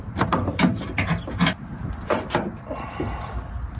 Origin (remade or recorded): recorded